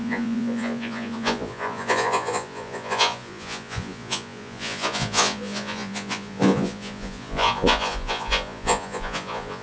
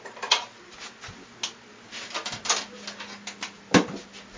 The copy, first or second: first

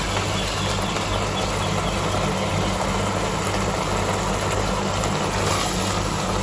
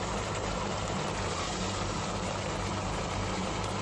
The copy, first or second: second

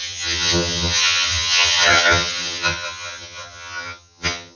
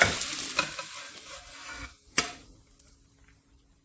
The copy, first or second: first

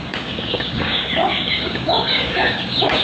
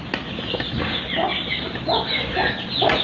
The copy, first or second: first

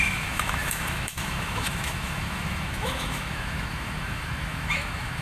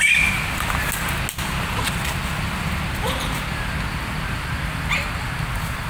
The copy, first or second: first